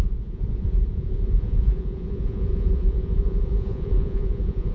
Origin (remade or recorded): remade